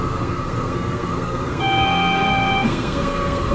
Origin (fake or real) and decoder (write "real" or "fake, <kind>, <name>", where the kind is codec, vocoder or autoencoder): fake, codec, SNAC